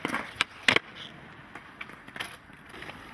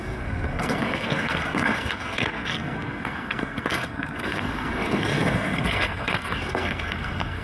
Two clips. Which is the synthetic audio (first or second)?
second